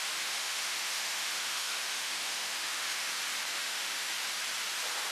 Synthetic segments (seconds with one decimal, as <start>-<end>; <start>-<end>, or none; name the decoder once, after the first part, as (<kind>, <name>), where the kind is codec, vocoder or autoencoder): 0.0-3.1 (autoencoder, DAC-VAE); 3.5-4.1